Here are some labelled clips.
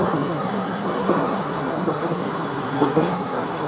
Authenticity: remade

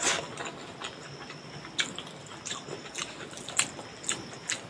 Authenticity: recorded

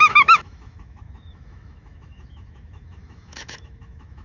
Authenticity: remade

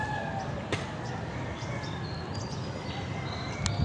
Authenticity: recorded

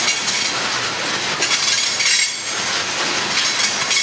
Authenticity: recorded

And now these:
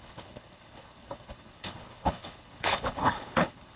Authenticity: remade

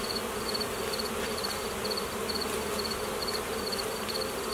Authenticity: recorded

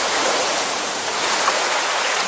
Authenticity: remade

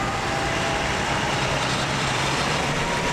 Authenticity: remade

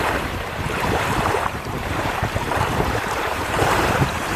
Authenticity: remade